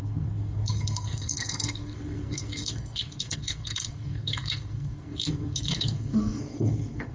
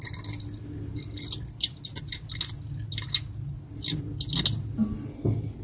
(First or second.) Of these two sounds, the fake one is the first